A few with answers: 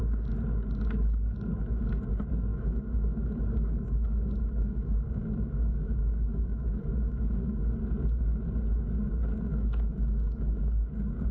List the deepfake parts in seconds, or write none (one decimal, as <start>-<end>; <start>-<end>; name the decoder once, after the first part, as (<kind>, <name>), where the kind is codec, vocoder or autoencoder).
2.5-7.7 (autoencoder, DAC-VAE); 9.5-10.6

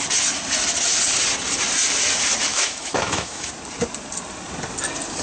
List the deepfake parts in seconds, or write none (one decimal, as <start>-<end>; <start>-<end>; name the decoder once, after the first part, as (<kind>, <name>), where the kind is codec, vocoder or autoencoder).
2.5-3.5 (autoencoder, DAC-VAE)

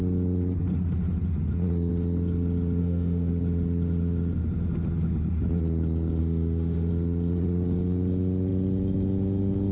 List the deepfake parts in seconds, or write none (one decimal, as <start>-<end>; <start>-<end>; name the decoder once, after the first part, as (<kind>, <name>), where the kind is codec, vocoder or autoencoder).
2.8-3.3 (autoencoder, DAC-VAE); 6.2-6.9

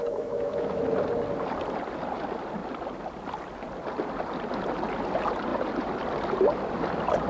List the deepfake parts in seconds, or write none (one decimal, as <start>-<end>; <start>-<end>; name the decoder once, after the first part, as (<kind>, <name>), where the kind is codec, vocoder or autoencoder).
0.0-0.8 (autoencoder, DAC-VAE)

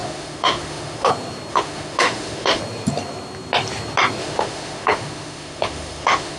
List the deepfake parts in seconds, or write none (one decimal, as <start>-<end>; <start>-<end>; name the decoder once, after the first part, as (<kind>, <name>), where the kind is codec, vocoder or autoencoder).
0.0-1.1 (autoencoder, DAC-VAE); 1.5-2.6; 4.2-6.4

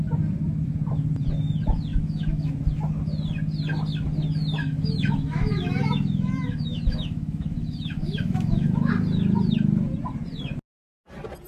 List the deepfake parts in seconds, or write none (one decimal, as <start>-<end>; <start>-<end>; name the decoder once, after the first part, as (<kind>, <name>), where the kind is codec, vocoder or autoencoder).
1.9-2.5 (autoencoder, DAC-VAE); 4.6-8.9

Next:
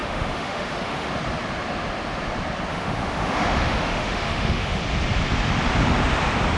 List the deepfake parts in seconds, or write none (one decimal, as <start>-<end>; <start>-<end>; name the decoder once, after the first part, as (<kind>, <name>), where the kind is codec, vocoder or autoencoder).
0.0-1.1 (autoencoder, DAC-VAE); 2.7-4.8